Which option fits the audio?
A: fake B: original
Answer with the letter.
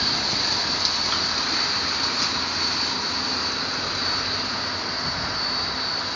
B